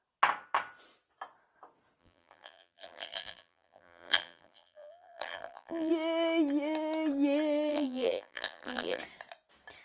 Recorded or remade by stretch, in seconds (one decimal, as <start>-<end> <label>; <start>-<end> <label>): 0.0-2.0 recorded; 2.0-5.9 remade; 5.9-7.7 recorded; 7.7-9.0 remade; 9.0-9.8 recorded